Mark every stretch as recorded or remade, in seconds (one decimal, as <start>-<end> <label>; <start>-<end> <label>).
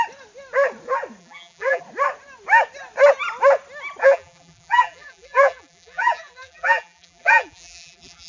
0.0-1.2 recorded; 1.2-1.8 remade; 1.8-4.0 recorded; 4.0-8.3 remade